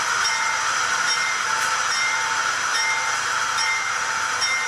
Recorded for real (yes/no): no